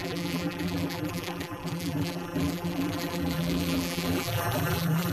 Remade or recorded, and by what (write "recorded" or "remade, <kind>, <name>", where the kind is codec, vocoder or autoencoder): remade, vocoder, BigVGAN v2